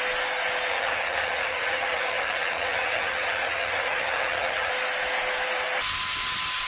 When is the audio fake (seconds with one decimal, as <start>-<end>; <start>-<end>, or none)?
0.7-4.7